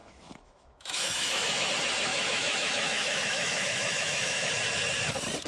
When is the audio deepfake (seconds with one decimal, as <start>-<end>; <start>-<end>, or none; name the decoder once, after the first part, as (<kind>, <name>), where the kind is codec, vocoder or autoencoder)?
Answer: 0.0-1.7 (autoencoder, DAC-VAE); 2.1-4.5